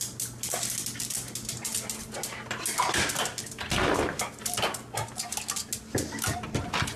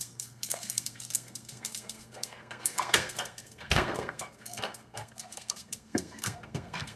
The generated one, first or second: second